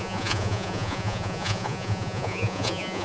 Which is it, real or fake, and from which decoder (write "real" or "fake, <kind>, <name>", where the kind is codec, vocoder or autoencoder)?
fake, vocoder, Vocos